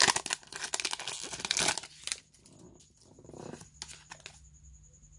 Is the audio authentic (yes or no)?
yes